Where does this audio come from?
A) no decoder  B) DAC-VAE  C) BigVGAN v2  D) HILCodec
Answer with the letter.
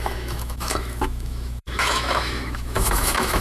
B